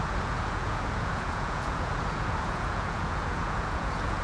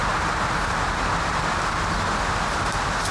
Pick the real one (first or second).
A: second